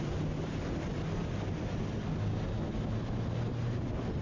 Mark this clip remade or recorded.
recorded